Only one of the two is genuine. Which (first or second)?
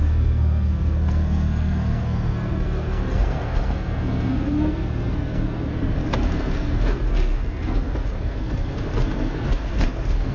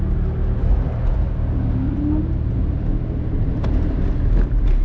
second